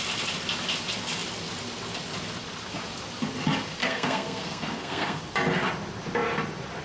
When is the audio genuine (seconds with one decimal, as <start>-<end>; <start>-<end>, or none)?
0.0-3.8; 5.2-6.8